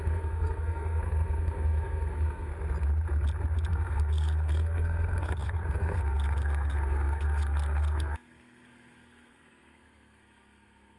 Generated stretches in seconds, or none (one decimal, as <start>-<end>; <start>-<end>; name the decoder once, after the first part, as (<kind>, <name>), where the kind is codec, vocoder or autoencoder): 0.0-2.5 (codec, SNAC); 3.7-11.0